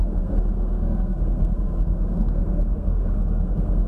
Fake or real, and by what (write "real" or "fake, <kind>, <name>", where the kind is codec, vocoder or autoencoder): fake, codec, SNAC